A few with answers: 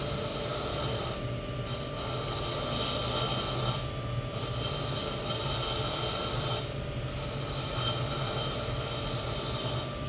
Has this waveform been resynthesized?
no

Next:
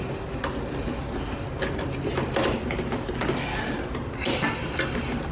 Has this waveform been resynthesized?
no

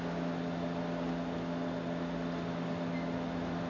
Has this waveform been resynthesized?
no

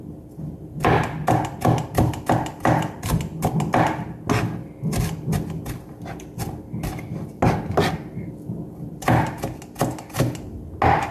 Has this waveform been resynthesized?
no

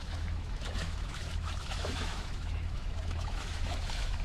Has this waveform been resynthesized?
yes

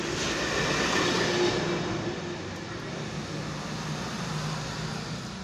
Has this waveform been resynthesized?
no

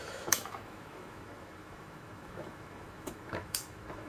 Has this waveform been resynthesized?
yes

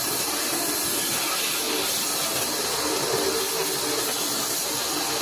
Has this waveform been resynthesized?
no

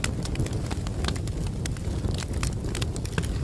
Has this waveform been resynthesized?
no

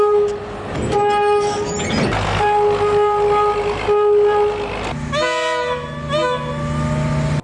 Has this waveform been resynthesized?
no